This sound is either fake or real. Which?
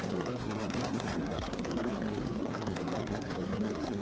fake